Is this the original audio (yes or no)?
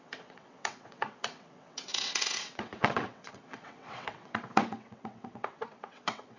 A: no